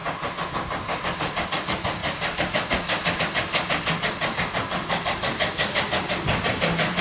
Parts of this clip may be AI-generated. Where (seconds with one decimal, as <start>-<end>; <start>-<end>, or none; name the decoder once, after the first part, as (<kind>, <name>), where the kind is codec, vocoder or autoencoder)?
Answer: none

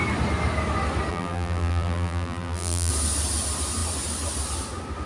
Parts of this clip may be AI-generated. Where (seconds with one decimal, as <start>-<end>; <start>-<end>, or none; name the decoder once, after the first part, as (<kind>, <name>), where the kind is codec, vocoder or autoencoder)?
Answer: 1.1-2.9 (vocoder, BigVGAN v2)

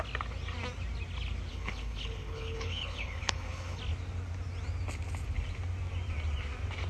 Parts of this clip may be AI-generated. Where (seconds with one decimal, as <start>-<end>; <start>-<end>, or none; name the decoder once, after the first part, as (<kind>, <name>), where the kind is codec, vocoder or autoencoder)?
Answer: 1.5-3.8 (codec, HILCodec)

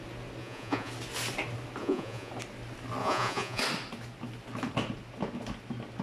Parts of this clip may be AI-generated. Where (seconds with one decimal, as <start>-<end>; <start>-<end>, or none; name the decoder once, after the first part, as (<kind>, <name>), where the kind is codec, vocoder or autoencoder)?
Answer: 0.4-0.9 (vocoder, Vocos); 1.8-2.3; 3.0-3.6